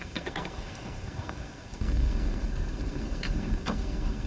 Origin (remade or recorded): remade